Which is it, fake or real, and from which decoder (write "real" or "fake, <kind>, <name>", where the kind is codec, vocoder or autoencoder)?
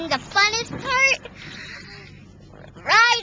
real